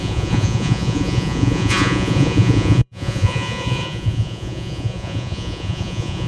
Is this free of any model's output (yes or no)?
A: no